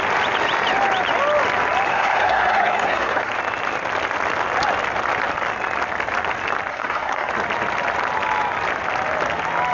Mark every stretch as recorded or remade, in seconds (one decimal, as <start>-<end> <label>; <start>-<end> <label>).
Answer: 0.0-1.9 recorded; 1.9-3.3 remade; 3.3-6.7 recorded; 6.7-7.3 remade; 7.3-9.7 recorded